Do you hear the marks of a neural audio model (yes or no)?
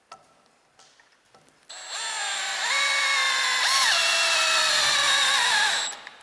no